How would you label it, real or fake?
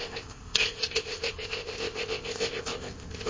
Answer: fake